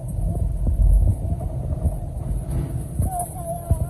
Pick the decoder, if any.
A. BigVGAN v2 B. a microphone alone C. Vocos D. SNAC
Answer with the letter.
B